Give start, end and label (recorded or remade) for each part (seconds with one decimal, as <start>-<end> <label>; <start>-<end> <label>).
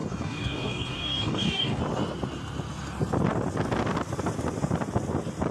0.0-1.8 remade; 1.8-5.5 recorded